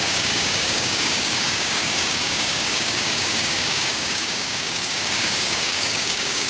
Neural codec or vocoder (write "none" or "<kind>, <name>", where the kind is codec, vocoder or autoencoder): codec, DAC